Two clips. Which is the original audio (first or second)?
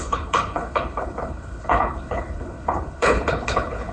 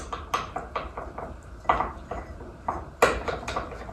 second